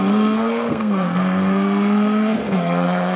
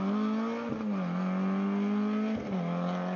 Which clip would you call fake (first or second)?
first